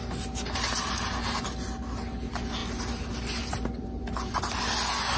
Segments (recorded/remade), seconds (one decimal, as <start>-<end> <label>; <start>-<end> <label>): 0.0-5.2 recorded